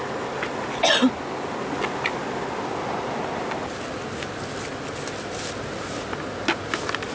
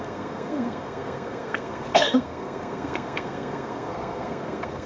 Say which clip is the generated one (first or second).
second